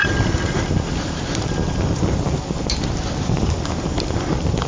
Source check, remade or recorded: recorded